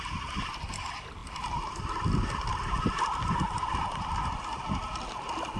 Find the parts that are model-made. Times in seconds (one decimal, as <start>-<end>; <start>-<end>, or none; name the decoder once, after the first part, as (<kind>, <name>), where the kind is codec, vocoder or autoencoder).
none